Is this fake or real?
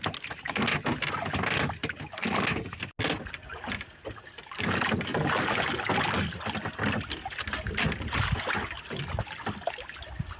real